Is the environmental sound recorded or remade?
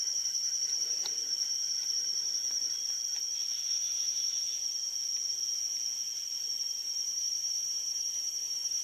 recorded